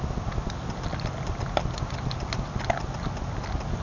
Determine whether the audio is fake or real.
real